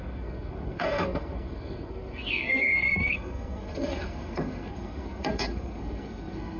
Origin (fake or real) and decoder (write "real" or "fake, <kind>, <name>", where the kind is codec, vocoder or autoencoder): fake, codec, SNAC